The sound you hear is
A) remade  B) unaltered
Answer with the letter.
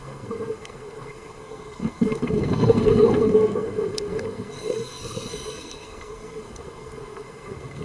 A